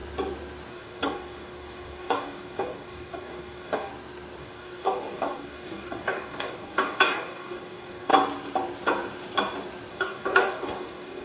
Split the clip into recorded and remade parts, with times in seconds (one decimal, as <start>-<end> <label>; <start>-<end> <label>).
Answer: 0.0-0.7 recorded; 0.7-3.9 remade; 3.9-4.4 recorded; 4.4-8.1 remade; 8.1-9.9 recorded; 9.9-11.2 remade